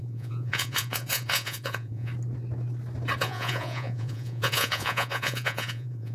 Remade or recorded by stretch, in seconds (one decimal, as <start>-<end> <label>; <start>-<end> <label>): 0.0-2.1 remade; 2.1-3.2 recorded; 3.2-6.1 remade